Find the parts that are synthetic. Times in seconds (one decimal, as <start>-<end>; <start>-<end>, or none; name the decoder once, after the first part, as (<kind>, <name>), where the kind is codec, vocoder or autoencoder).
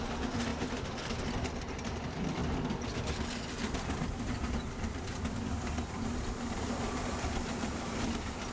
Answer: none